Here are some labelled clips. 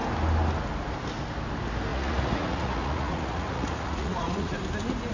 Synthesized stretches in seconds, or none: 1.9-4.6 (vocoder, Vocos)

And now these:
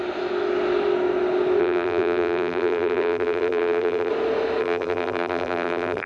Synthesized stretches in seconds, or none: 1.6-4.1 (vocoder, BigVGAN v2); 4.6-6.1

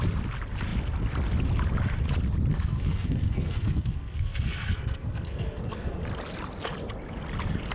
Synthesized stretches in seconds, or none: 2.5-6.0 (codec, SNAC)